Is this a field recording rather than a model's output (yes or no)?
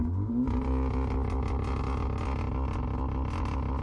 yes